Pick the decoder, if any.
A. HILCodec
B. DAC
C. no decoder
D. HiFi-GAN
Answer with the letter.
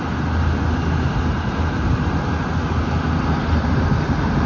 C